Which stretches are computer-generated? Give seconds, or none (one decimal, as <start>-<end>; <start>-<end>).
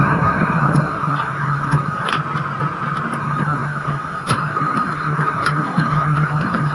0.0-2.1; 3.2-6.7